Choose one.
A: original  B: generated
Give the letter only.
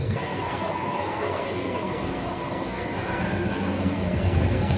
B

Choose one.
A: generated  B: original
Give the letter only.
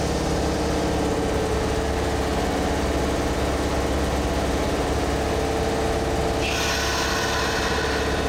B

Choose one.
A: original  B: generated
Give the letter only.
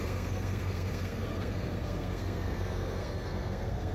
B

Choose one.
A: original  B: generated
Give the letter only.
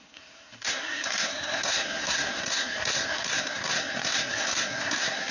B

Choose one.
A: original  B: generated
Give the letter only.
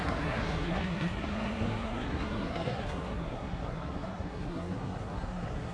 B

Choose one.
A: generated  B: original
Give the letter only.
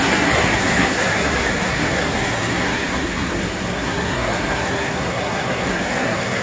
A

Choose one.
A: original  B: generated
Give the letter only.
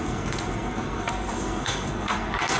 B